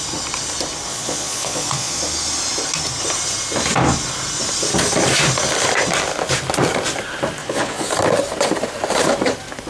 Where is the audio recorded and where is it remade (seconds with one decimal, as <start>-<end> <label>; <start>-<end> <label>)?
0.0-0.9 recorded; 0.9-2.0 remade; 2.0-7.4 recorded; 7.4-7.9 remade; 7.9-9.7 recorded